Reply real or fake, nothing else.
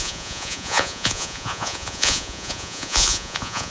fake